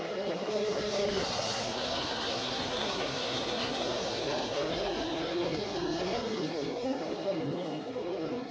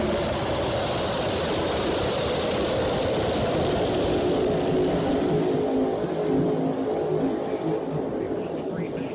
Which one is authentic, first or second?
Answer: second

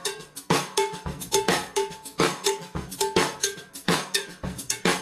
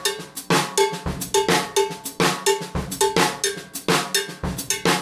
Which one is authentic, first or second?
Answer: second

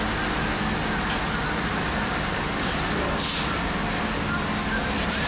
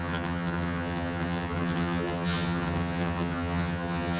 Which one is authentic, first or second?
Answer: first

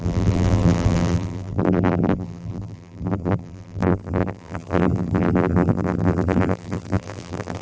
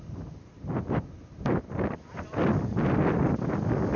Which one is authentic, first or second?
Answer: second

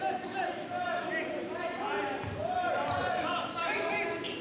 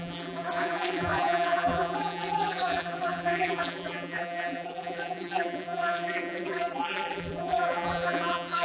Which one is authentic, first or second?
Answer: first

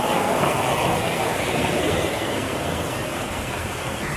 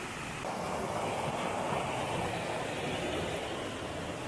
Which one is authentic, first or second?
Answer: second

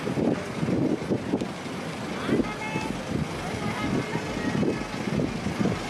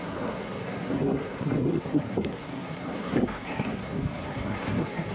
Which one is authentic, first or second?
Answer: first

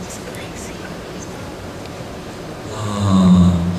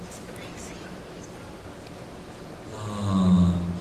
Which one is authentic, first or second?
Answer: second